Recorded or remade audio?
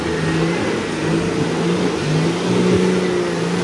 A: recorded